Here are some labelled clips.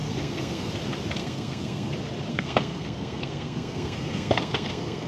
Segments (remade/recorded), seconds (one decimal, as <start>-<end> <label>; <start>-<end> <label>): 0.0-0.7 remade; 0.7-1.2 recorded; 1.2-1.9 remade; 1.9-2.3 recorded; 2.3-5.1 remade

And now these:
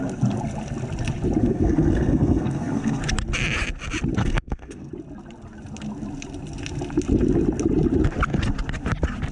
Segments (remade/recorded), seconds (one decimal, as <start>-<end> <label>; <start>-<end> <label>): 0.0-1.4 recorded; 1.4-3.0 remade; 3.0-4.2 recorded; 4.2-4.9 remade; 4.9-9.3 recorded

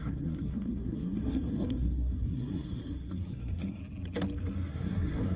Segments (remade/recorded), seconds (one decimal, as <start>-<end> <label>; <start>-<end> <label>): 0.0-3.8 remade; 3.8-4.7 recorded; 4.7-5.4 remade

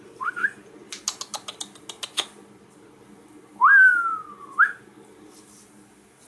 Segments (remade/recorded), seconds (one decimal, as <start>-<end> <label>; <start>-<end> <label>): 0.0-6.3 recorded

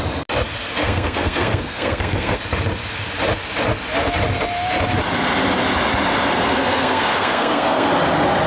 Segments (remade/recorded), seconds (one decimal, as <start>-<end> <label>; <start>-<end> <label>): 0.0-0.8 recorded; 0.8-2.4 remade; 2.4-6.6 recorded; 6.6-7.9 remade; 7.9-8.5 recorded

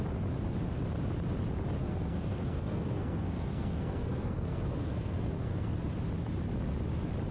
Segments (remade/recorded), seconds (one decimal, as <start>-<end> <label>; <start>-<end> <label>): 0.0-1.8 recorded; 1.8-5.9 remade; 5.9-7.3 recorded

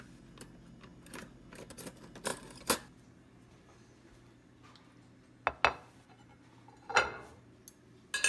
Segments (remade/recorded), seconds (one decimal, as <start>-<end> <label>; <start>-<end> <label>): 0.0-8.3 recorded

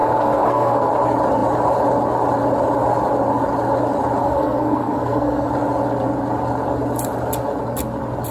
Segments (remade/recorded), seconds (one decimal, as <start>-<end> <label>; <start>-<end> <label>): 0.0-0.9 remade; 0.9-4.2 recorded; 4.2-5.5 remade; 5.5-8.3 recorded